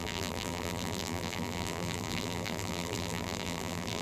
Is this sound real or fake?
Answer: fake